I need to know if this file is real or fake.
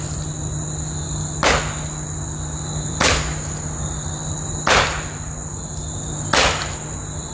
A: real